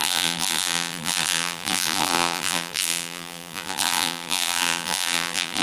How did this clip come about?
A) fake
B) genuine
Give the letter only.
A